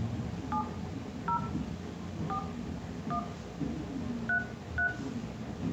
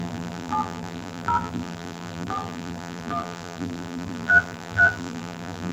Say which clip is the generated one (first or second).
second